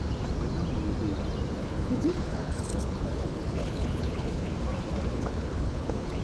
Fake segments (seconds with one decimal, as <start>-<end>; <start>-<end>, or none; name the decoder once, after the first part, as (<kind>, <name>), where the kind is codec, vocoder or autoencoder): 1.6-4.5 (codec, HILCodec); 5.1-6.2

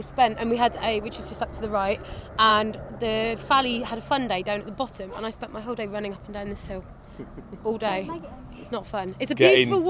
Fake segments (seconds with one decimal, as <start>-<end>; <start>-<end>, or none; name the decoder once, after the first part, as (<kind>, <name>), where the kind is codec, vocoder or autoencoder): none

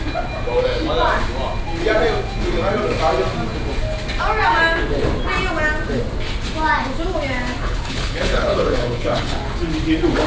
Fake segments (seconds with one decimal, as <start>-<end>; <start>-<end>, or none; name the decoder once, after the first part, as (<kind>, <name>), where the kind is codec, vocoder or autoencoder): 7.6-9.4 (codec, HILCodec)

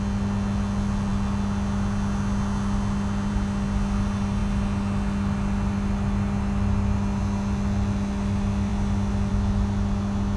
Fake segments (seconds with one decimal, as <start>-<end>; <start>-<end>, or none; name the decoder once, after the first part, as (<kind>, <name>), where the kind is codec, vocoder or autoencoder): none